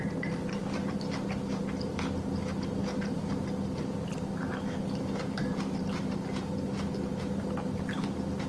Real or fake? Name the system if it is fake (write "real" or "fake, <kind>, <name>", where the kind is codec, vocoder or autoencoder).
real